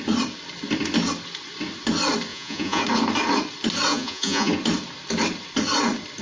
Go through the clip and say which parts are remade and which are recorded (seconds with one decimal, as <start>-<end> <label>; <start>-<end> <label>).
0.0-2.3 recorded; 2.3-2.8 remade; 2.8-3.9 recorded; 3.9-4.5 remade; 4.5-6.2 recorded